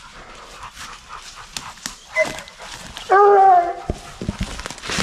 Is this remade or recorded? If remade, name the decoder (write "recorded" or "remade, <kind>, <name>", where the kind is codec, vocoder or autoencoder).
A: recorded